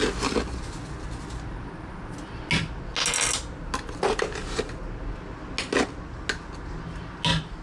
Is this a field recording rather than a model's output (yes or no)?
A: yes